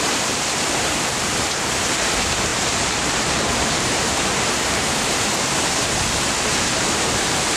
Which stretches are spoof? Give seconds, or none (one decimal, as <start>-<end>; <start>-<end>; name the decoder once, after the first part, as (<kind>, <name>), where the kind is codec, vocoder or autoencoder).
0.0-7.6 (vocoder, BigVGAN v2)